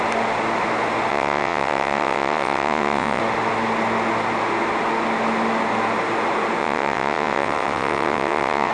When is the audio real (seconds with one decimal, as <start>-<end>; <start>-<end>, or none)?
0.0-1.1; 3.2-6.6